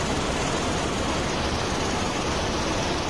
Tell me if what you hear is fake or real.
real